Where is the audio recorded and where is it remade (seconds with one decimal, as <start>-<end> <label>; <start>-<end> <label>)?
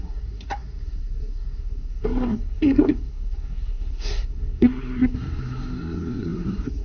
0.0-6.8 remade